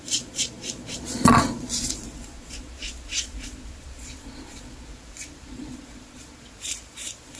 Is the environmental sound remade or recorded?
remade